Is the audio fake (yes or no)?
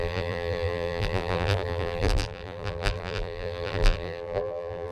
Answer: yes